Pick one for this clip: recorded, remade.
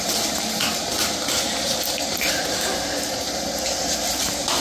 recorded